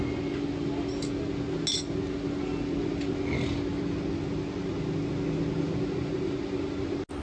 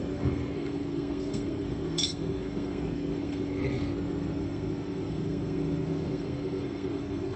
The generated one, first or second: second